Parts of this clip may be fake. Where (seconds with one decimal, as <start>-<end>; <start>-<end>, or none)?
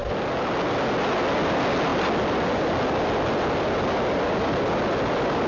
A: none